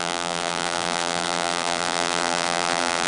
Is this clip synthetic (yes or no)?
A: yes